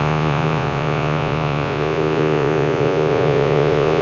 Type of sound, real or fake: fake